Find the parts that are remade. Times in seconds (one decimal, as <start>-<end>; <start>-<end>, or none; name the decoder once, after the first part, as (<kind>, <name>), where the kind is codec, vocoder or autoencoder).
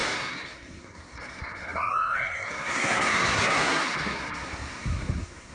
0.0-5.5 (codec, SNAC)